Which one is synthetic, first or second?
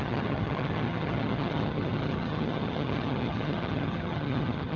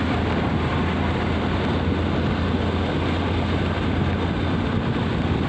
first